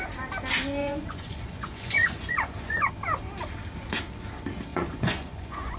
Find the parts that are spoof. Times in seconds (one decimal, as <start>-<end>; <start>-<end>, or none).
0.8-2.9; 4.7-5.8